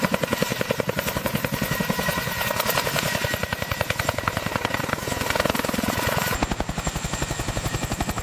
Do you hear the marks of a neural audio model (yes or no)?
no